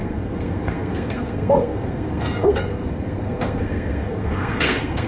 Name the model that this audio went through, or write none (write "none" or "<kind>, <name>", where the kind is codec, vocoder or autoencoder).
codec, SNAC